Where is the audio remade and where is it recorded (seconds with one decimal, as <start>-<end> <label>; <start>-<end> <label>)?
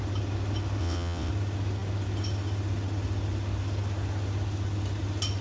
0.0-0.8 recorded; 0.8-1.3 remade; 1.3-5.4 recorded